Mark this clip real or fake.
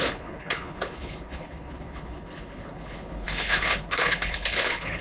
fake